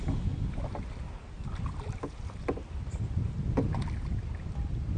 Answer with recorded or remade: recorded